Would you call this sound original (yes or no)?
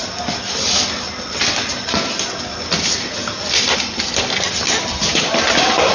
yes